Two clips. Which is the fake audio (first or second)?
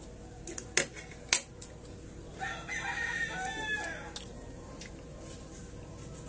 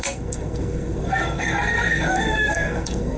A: second